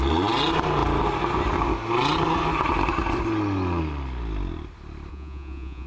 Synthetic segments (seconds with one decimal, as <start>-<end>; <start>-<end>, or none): 5.1-5.9